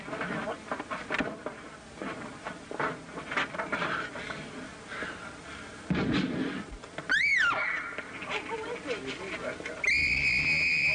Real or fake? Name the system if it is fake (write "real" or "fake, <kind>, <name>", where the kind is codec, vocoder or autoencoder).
real